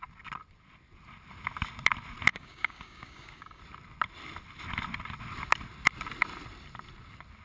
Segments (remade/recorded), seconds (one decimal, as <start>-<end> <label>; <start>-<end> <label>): 0.0-2.3 recorded; 2.3-3.6 remade; 3.6-7.4 recorded